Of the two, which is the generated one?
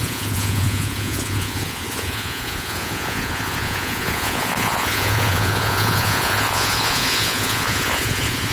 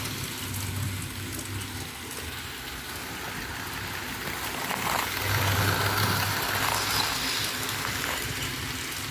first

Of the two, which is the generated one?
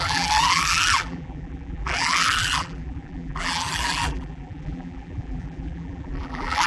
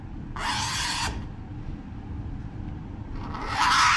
first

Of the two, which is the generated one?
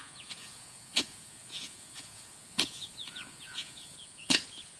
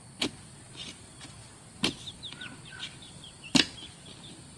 first